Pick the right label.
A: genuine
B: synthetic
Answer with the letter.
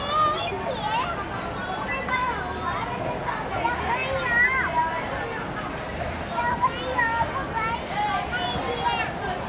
A